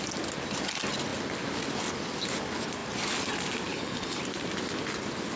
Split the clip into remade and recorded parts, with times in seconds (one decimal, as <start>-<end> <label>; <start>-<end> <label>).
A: 0.0-3.7 recorded; 3.7-4.2 remade; 4.2-5.4 recorded